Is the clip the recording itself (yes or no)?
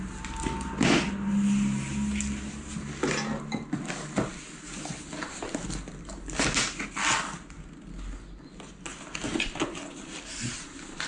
yes